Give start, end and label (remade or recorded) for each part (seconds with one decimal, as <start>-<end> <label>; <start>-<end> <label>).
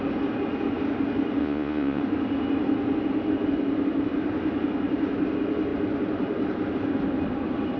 0.0-1.4 recorded; 1.4-2.0 remade; 2.0-7.8 recorded